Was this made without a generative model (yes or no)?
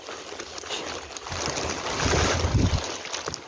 yes